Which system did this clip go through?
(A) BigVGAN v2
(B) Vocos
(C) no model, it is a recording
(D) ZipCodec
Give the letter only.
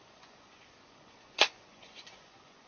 B